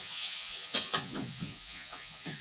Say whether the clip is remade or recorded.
remade